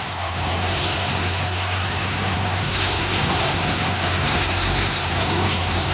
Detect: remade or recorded remade